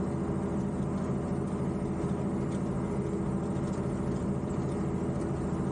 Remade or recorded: recorded